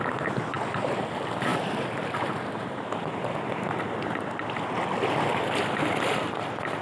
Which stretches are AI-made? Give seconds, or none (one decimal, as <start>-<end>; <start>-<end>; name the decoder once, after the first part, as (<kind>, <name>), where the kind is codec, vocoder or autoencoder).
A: none